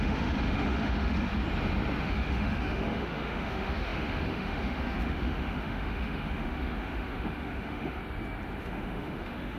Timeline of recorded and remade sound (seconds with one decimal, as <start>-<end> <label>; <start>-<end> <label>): 0.0-1.3 remade; 1.3-2.0 recorded; 2.0-8.0 remade; 8.0-8.6 recorded; 8.6-9.6 remade